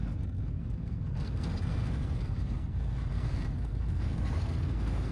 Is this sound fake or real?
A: fake